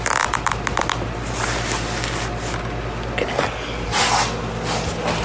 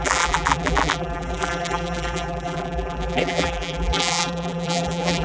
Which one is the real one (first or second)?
first